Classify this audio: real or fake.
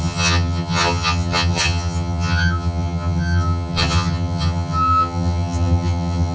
fake